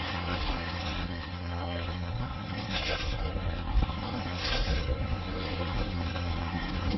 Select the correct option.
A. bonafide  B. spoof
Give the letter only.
B